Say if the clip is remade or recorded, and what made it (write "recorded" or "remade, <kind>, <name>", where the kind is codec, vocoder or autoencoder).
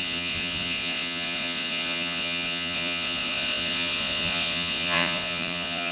remade, vocoder, Vocos